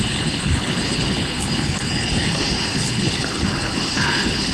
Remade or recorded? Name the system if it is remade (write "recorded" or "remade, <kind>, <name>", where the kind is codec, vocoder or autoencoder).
remade, codec, HILCodec